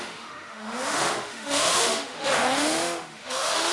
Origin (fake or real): fake